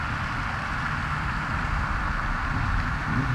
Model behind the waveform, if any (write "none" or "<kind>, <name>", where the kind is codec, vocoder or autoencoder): none